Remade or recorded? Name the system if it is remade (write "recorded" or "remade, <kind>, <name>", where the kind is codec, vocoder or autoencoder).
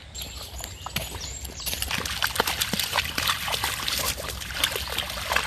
recorded